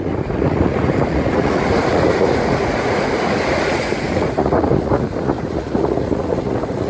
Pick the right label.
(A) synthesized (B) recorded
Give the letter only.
A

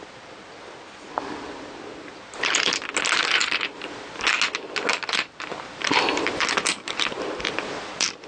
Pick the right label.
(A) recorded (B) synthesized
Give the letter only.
A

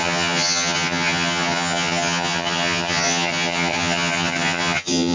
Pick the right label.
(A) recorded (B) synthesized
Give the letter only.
B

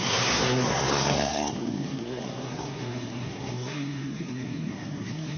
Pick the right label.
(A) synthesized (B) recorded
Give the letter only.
A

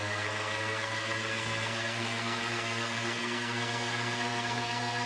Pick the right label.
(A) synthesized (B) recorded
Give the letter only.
A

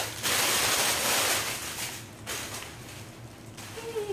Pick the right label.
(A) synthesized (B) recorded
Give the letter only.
B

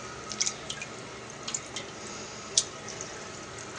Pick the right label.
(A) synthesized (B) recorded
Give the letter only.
B